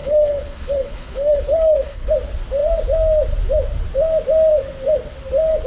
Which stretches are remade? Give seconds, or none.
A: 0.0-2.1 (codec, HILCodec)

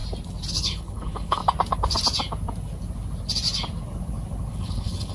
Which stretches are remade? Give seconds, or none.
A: 0.5-1.4 (codec, HILCodec); 4.5-5.1

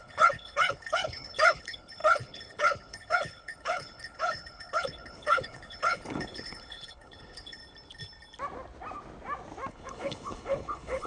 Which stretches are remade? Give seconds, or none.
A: 0.0-7.6 (codec, HILCodec); 9.7-11.1

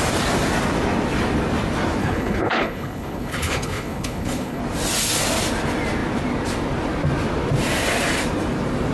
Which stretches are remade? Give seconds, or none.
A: 2.0-4.6 (codec, HILCodec)

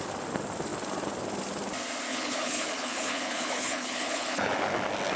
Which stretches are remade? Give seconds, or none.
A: 2.1-4.5 (codec, HILCodec)